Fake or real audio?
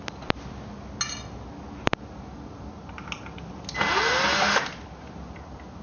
real